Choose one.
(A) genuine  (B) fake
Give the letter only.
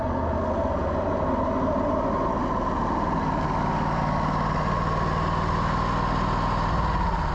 A